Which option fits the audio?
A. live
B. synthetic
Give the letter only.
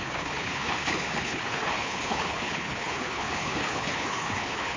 B